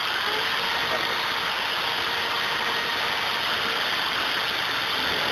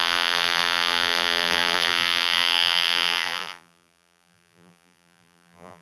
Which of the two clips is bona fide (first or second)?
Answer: first